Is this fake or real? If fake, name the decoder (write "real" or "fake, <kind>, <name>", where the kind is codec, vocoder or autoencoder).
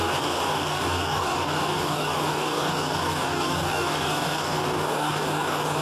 fake, codec, DAC